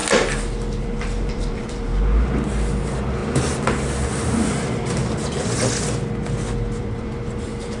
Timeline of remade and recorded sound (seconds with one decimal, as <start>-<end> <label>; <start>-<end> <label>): 0.0-0.8 recorded; 0.8-3.2 remade; 3.2-4.1 recorded; 4.1-5.0 remade; 5.0-6.8 recorded; 6.8-7.8 remade